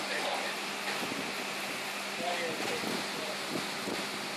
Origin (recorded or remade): recorded